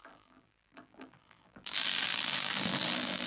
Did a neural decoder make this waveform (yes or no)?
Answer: yes